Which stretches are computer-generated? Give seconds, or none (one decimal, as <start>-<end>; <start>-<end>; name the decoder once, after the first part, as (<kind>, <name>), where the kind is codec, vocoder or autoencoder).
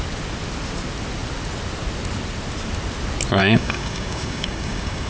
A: 3.4-5.1 (codec, DAC)